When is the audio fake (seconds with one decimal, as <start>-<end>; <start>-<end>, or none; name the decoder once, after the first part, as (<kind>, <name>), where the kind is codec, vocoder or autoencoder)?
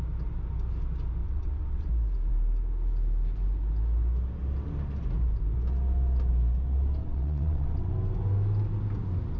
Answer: 1.2-1.9 (vocoder, WaveNeXt); 7.0-7.9